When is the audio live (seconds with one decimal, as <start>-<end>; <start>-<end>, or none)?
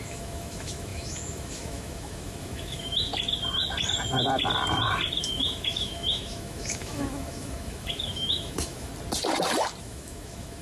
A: 3.1-5.2; 8.9-9.8